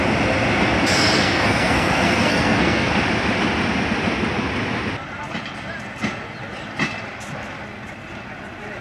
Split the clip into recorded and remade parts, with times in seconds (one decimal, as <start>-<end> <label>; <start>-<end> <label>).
0.0-0.9 recorded; 0.9-2.9 remade; 2.9-8.8 recorded